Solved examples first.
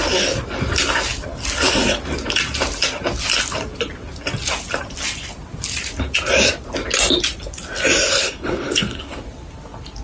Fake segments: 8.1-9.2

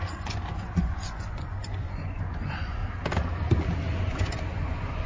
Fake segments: 0.0-2.8; 4.0-5.1

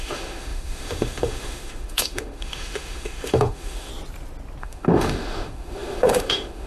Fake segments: 0.0-3.9; 4.6-6.7

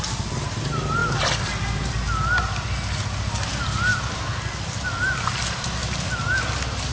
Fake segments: none

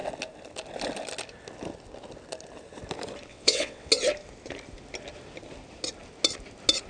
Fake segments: 3.3-3.9